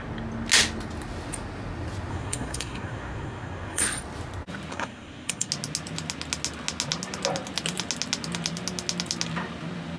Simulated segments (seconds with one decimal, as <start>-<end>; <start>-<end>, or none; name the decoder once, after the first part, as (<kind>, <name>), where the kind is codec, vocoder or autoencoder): 2.1-3.8 (codec, SNAC); 4.7-5.5